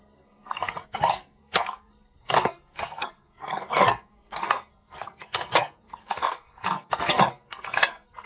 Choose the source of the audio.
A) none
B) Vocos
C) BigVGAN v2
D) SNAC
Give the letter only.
D